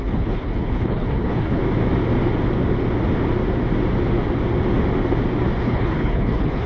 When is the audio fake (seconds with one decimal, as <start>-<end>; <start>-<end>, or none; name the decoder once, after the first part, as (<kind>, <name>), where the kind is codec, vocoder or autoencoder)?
0.0-1.6 (codec, HILCodec); 5.6-6.7